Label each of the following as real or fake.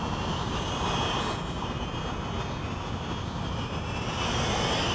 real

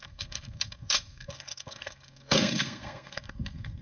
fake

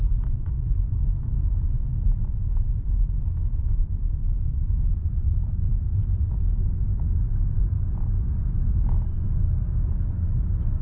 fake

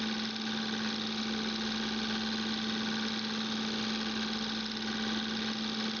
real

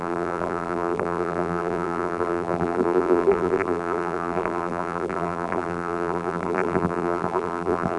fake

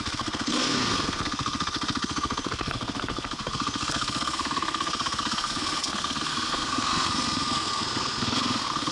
fake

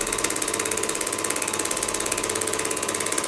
real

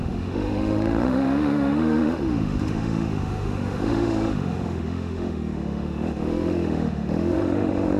fake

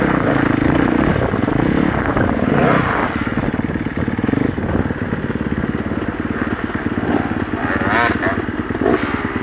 real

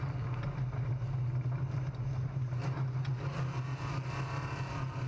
real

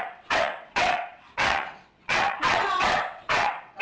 fake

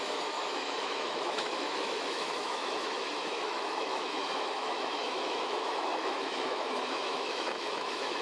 fake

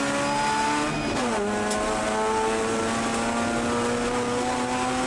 real